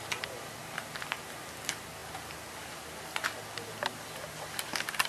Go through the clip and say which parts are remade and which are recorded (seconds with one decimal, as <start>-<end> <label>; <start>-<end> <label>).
0.0-5.1 recorded

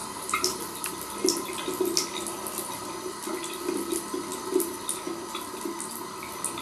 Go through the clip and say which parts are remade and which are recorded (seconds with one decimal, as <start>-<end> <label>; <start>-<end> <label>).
0.0-0.6 remade; 0.6-6.6 recorded

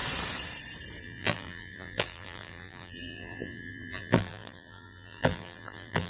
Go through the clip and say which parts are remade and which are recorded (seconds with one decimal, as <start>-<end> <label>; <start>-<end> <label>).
0.0-1.0 recorded; 1.0-6.1 remade